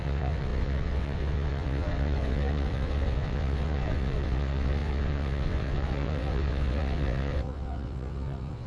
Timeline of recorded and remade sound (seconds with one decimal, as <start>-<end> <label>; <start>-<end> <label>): 0.0-8.7 remade